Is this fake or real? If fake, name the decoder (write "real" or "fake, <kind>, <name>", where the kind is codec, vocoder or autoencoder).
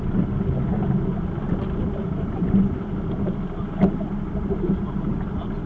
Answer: real